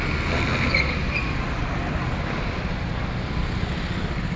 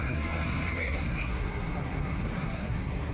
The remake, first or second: second